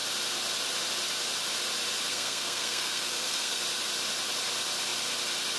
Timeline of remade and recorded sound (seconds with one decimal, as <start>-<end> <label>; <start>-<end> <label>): 0.0-2.1 recorded; 2.1-3.6 remade; 3.6-5.6 recorded